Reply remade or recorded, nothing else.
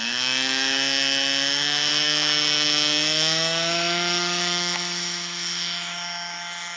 remade